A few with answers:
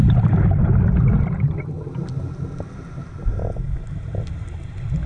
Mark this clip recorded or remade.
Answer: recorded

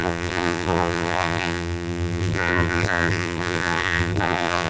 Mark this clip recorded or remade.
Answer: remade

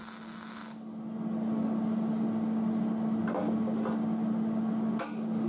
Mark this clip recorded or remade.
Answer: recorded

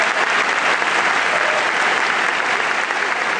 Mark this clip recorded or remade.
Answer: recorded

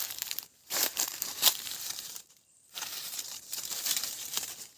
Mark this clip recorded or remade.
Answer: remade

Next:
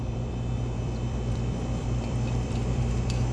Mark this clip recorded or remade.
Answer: remade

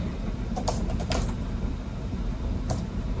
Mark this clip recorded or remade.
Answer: remade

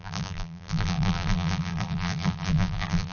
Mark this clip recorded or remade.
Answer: remade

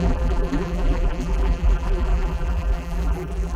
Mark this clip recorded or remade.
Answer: remade